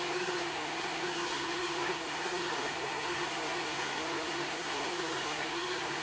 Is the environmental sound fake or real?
fake